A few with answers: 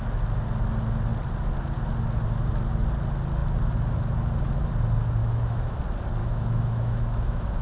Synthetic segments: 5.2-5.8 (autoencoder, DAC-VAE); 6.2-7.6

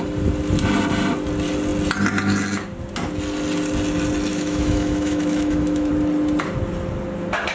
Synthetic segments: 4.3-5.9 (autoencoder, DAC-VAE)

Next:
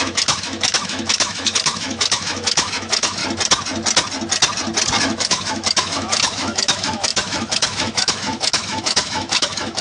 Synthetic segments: 0.0-3.2 (autoencoder, DAC-VAE); 5.0-9.8

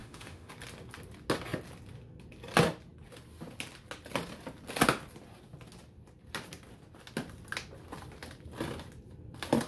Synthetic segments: 0.0-0.5 (autoencoder, DAC-VAE)